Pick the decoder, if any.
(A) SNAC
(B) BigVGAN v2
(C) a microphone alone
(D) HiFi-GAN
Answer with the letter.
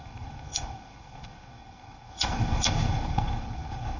A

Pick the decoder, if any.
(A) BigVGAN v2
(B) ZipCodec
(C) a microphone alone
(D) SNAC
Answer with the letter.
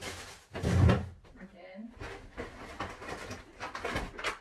C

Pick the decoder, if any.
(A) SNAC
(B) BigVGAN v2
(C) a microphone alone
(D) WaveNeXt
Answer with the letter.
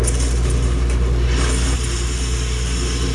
C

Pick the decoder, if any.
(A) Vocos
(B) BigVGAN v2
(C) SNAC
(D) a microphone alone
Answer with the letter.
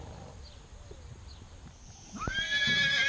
D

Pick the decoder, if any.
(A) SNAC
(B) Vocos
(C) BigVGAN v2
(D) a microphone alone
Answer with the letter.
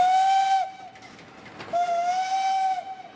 D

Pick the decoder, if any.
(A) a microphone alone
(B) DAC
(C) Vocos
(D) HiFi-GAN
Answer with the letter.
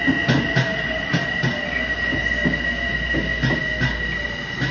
A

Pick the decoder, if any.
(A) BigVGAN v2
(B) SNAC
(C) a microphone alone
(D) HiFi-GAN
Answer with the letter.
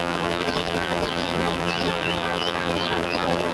A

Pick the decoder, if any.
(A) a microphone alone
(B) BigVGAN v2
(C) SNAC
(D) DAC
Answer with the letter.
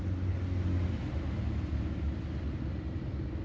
A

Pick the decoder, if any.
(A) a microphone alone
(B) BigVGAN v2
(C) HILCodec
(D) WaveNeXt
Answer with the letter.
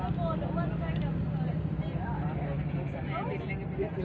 A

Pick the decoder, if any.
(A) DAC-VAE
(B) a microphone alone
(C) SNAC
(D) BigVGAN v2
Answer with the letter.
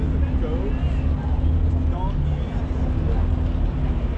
B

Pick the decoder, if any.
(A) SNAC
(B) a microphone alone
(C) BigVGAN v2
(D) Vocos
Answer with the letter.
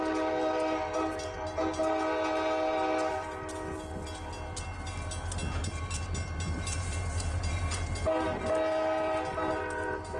B